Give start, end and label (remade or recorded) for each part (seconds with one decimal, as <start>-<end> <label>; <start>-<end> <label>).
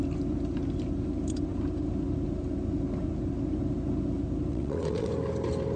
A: 0.0-4.5 recorded; 4.5-5.1 remade; 5.1-5.8 recorded